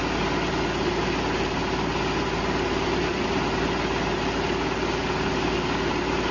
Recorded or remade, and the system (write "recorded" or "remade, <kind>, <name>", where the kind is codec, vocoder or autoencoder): recorded